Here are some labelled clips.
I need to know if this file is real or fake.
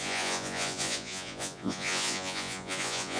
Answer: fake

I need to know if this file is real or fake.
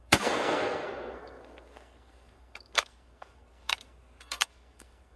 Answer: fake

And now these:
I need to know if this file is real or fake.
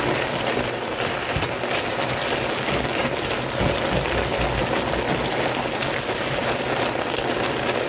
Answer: real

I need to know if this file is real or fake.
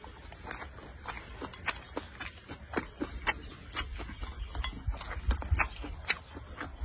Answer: real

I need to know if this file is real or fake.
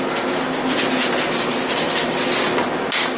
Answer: real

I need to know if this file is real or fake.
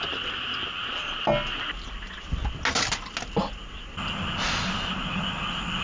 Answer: real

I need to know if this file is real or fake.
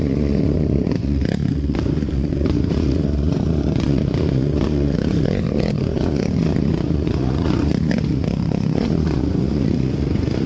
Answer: fake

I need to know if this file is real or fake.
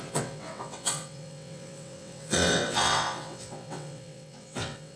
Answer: fake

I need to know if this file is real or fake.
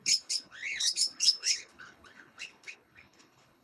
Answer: fake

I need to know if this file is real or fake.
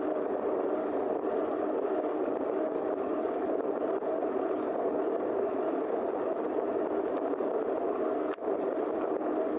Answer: real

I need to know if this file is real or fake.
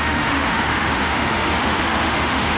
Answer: fake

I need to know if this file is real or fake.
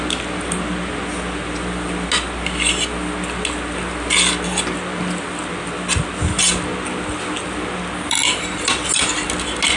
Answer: real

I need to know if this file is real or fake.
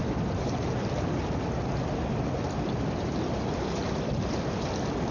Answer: real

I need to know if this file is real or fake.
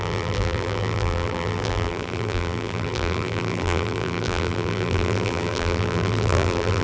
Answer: fake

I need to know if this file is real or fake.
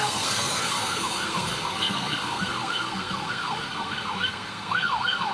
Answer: fake